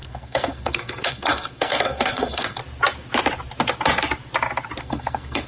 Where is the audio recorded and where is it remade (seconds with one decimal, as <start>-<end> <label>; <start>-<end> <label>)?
0.0-2.6 remade; 2.6-4.8 recorded; 4.8-5.5 remade

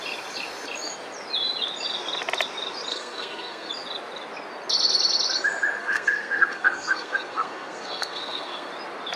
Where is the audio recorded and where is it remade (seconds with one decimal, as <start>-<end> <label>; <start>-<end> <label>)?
0.0-2.9 recorded; 2.9-3.7 remade; 3.7-5.8 recorded; 5.8-8.7 remade; 8.7-9.2 recorded

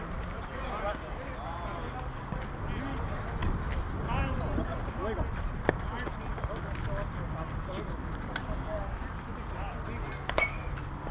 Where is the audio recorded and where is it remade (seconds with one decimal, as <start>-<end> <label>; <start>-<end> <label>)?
0.0-11.1 recorded

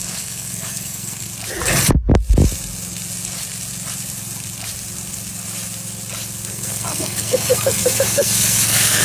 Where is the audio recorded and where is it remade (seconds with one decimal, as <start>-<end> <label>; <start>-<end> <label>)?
0.0-1.3 remade; 1.3-6.5 recorded; 6.5-9.0 remade

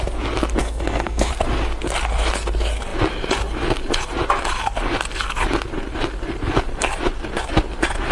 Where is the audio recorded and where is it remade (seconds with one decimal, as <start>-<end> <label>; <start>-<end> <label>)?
0.0-0.6 recorded; 0.6-1.3 remade; 1.3-8.1 recorded

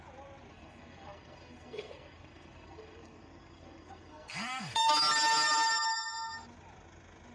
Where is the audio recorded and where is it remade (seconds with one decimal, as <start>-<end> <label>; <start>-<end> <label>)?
0.0-0.5 recorded; 0.5-4.9 remade; 4.9-7.3 recorded

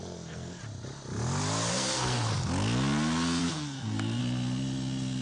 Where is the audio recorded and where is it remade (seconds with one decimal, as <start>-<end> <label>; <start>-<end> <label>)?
0.0-0.6 remade; 0.6-1.7 recorded; 1.7-2.3 remade; 2.3-3.4 recorded; 3.4-4.2 remade; 4.2-5.2 recorded

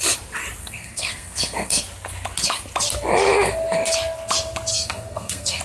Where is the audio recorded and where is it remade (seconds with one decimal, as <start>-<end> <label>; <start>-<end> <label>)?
0.0-0.6 recorded; 0.6-1.8 remade; 1.8-4.7 recorded; 4.7-5.6 remade